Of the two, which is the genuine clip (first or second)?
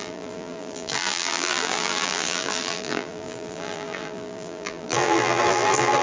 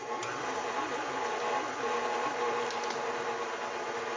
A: second